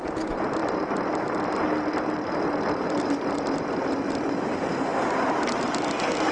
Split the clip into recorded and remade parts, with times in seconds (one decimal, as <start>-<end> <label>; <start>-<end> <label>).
0.0-0.6 recorded; 0.6-4.4 remade; 4.4-6.3 recorded